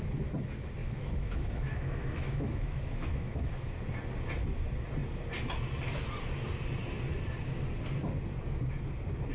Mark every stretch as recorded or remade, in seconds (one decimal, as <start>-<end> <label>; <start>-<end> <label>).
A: 0.0-0.8 recorded; 0.8-3.5 remade; 3.5-9.3 recorded